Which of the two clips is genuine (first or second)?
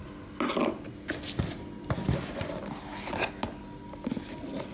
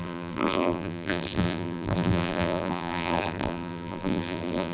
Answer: first